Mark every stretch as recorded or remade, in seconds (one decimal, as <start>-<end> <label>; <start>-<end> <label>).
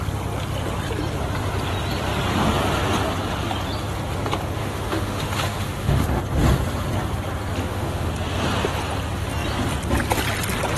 0.0-4.6 recorded; 4.6-6.2 remade; 6.2-7.6 recorded; 7.6-8.1 remade; 8.1-10.8 recorded